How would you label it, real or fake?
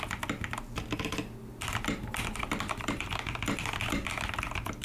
real